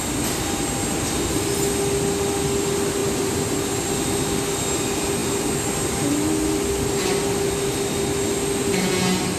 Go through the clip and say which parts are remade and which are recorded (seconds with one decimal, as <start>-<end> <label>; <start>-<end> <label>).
0.0-3.0 recorded; 3.0-3.8 remade; 3.8-9.4 recorded